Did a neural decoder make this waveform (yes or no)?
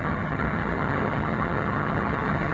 yes